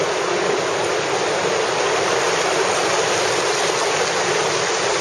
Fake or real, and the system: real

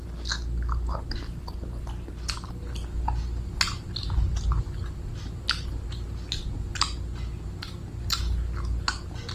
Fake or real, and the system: real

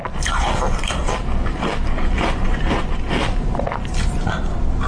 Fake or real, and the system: real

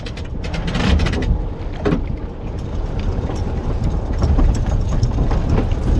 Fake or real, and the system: real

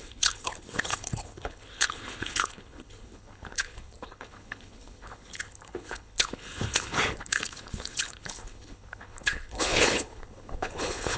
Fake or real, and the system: fake, codec, HILCodec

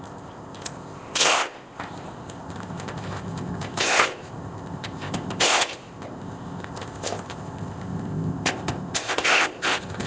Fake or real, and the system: fake, codec, ZipCodec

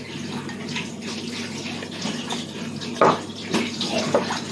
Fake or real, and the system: real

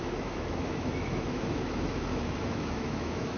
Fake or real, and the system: fake, autoencoder, DAC-VAE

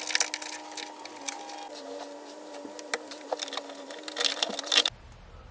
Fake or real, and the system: real